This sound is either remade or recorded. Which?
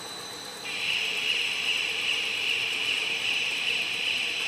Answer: remade